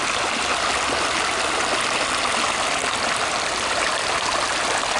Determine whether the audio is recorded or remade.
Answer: recorded